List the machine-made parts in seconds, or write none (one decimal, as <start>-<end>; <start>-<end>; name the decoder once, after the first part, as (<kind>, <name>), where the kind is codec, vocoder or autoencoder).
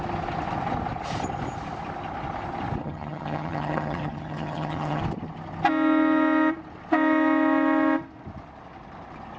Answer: 2.8-5.0 (vocoder, HiFi-GAN)